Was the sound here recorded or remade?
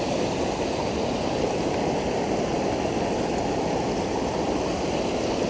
recorded